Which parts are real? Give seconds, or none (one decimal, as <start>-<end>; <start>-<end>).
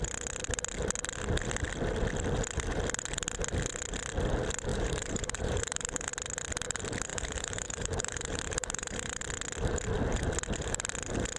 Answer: 0.0-4.7; 6.1-7.1; 9.2-11.4